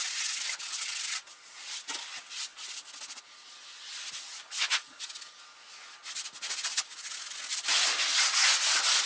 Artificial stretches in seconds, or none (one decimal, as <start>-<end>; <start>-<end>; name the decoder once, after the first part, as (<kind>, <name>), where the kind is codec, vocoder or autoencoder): none